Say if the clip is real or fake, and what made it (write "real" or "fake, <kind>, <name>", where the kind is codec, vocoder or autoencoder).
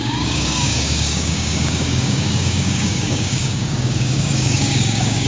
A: fake, codec, DAC